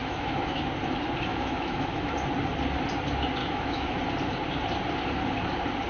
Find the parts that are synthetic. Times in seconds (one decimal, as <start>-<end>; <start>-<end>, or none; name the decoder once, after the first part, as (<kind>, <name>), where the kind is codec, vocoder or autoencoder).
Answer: 0.0-0.6 (autoencoder, DAC-VAE); 1.3-2.1; 3.4-4.0